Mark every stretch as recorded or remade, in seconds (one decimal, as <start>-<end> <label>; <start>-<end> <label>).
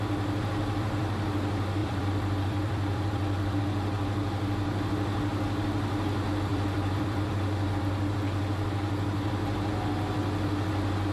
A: 0.0-1.8 recorded; 1.8-3.6 remade; 3.6-6.5 recorded; 6.5-7.8 remade; 7.8-11.1 recorded